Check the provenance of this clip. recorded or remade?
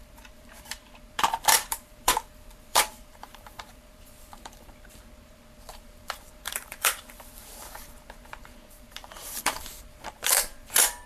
remade